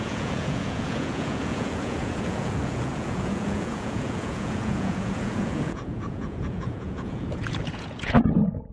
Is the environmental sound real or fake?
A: fake